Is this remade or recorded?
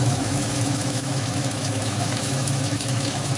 remade